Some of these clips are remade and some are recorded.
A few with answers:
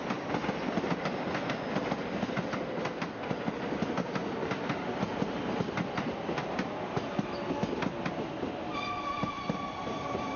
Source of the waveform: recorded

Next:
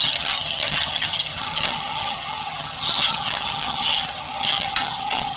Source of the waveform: remade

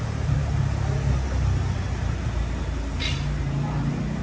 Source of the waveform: recorded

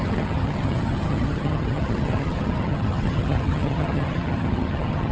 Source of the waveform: remade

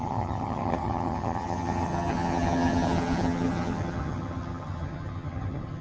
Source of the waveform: remade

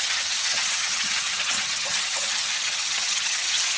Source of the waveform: remade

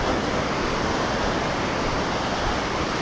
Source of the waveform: recorded